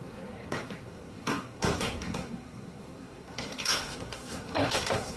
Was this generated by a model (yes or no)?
yes